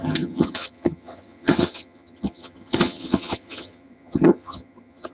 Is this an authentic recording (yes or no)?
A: no